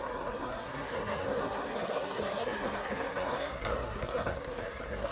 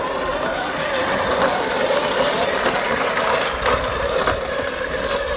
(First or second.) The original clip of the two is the second